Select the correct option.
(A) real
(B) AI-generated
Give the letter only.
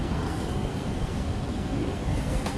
B